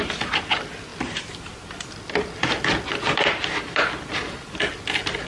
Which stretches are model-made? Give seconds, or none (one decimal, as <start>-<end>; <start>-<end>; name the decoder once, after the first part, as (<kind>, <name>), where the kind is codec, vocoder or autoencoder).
none